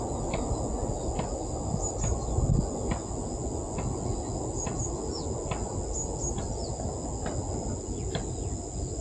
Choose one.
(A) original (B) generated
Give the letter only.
A